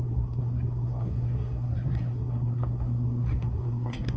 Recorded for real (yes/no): no